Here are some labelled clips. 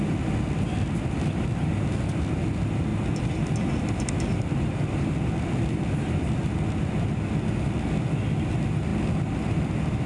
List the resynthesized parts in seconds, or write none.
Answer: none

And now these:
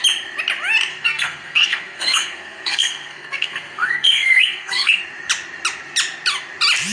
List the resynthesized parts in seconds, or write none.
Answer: 0.9-5.0 (codec, SNAC)

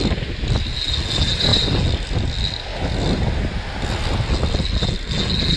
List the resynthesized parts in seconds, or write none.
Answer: none